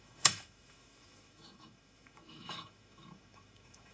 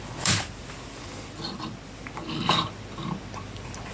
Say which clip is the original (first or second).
second